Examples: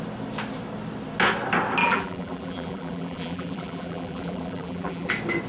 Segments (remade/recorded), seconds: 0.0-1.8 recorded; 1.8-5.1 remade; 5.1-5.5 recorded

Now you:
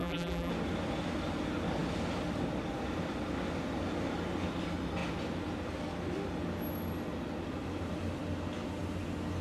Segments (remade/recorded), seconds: 0.0-0.5 remade; 0.5-9.4 recorded

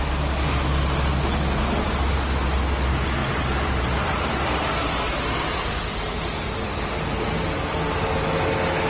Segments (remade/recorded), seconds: 0.0-3.2 recorded; 3.2-4.7 remade; 4.7-8.9 recorded

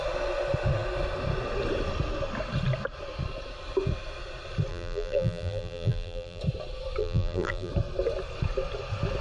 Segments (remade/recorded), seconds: 0.0-4.7 recorded; 4.7-6.4 remade; 6.4-7.0 recorded; 7.0-7.7 remade; 7.7-9.2 recorded

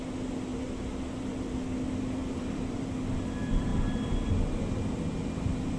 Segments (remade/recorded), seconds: 0.0-2.2 recorded; 2.2-2.9 remade; 2.9-5.8 recorded

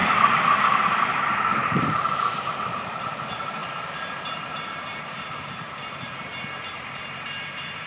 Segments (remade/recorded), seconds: 0.0-1.0 recorded; 1.0-7.9 remade